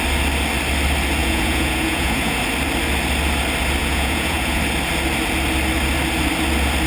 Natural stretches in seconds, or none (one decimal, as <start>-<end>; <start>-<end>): 0.0-1.2; 2.4-3.8; 4.6-6.9